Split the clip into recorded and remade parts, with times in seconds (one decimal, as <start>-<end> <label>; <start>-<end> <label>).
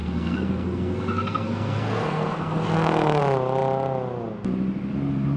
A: 0.0-3.2 remade; 3.2-5.4 recorded